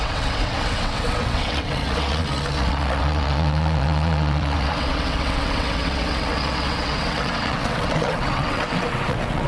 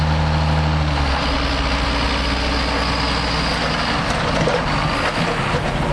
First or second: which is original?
second